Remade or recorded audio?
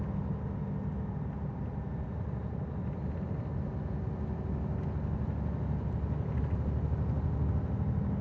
recorded